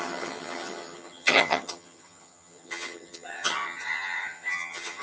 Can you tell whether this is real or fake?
fake